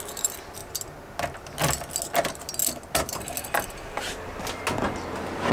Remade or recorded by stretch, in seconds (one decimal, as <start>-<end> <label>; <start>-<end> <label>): 0.0-5.5 recorded